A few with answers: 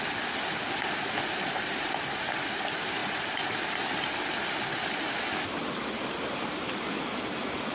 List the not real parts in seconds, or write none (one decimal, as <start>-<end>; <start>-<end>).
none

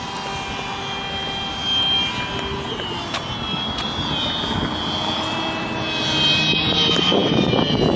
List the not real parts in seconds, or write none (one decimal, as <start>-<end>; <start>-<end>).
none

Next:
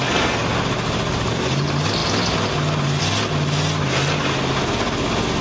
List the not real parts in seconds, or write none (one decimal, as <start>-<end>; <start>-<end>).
none